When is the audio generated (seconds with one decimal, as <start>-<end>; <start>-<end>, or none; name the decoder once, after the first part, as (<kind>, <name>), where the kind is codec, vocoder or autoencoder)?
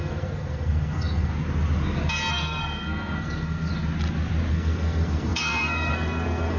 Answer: 0.0-1.3 (codec, SNAC); 2.3-3.7; 4.5-6.6